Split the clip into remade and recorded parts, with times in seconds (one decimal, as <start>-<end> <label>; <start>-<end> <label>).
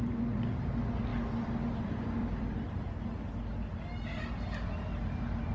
0.0-2.2 recorded; 2.2-2.7 remade; 2.7-5.5 recorded